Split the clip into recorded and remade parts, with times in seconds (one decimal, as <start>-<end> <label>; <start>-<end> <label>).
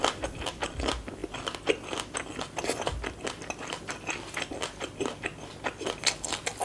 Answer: 0.0-6.6 recorded